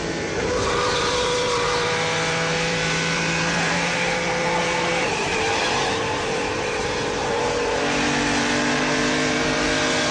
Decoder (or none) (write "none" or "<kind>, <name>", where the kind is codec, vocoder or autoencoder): vocoder, BigVGAN v2